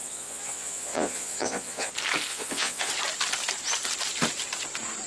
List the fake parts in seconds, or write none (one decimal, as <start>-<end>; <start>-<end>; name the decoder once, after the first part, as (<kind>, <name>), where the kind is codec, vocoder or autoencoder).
0.0-1.9 (vocoder, Vocos); 2.3-2.9